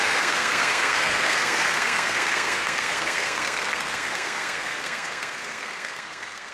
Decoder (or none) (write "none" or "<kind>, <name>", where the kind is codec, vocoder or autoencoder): codec, SNAC